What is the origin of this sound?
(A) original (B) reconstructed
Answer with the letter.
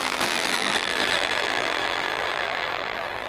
B